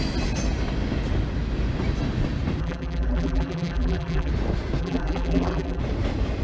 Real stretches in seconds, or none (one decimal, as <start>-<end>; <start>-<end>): 0.0-2.6; 4.3-4.8; 5.8-6.4